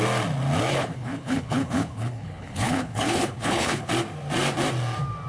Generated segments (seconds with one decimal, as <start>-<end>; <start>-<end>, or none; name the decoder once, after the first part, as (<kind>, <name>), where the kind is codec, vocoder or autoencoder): 0.7-3.9 (codec, HILCodec)